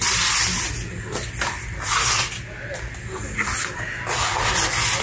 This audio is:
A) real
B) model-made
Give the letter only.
A